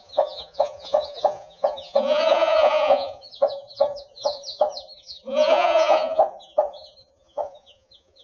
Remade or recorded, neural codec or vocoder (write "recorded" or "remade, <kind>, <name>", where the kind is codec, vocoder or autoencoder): remade, vocoder, Vocos